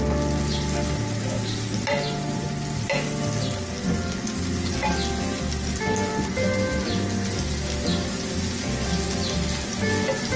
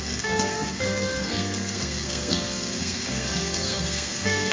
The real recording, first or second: first